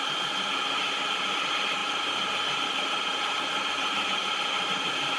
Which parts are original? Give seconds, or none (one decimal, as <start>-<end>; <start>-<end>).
0.0-1.8